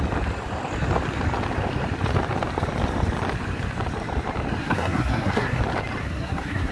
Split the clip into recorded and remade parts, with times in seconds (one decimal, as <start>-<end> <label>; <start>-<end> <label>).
0.0-4.6 recorded; 4.6-5.6 remade; 5.6-6.0 recorded; 6.0-6.7 remade